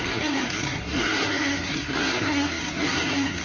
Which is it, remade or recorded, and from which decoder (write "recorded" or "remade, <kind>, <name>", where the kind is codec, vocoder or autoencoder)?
remade, codec, SNAC